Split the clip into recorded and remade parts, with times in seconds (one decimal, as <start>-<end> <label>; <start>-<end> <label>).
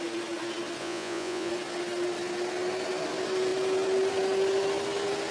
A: 0.0-0.8 recorded; 0.8-1.5 remade; 1.5-5.3 recorded